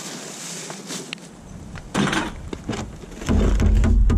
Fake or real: real